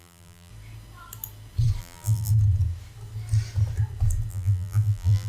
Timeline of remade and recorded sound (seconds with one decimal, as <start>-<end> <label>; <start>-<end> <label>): 0.0-0.5 remade; 0.5-1.8 recorded; 1.8-2.3 remade; 2.3-4.3 recorded; 4.3-5.3 remade